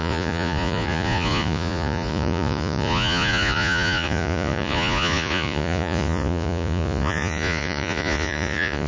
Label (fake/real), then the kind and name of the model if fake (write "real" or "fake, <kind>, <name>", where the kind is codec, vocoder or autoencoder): fake, vocoder, Vocos